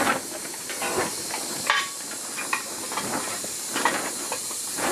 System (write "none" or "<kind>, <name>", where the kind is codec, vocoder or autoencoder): vocoder, BigVGAN v2